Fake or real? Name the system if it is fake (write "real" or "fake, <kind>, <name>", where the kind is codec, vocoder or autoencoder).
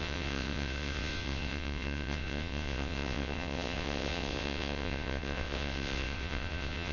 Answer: fake, vocoder, WaveNeXt